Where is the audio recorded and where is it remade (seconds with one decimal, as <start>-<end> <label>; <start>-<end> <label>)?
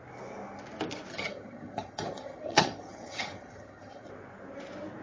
0.0-1.1 recorded; 1.1-4.1 remade; 4.1-5.0 recorded